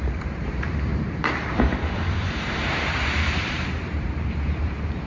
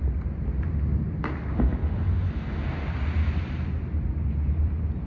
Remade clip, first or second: first